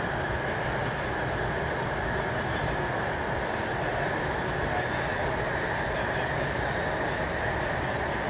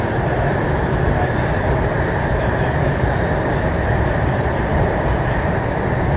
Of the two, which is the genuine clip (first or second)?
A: first